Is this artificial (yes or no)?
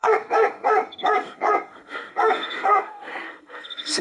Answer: yes